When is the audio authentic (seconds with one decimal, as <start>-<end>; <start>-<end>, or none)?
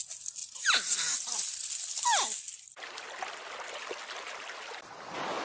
0.0-5.4